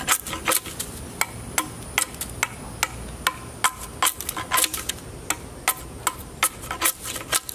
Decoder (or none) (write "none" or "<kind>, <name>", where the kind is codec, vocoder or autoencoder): none